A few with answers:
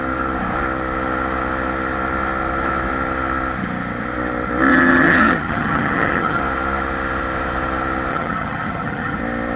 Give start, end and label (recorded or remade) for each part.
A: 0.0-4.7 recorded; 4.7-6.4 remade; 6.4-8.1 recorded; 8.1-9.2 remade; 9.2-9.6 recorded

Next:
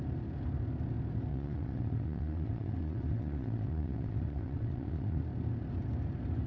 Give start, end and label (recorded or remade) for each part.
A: 0.0-1.3 recorded; 1.3-5.2 remade; 5.2-6.5 recorded

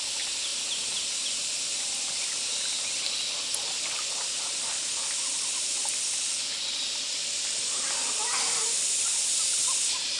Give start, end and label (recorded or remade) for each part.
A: 0.0-10.2 recorded

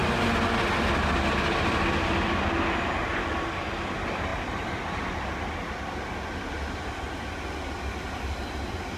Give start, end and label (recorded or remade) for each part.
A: 0.0-9.0 recorded

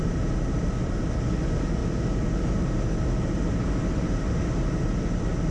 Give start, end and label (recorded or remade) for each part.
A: 0.0-5.5 recorded

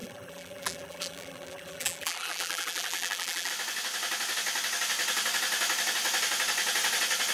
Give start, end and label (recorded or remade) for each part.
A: 0.0-3.5 remade; 3.5-7.3 recorded